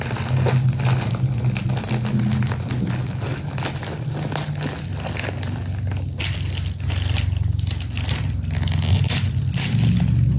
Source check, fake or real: real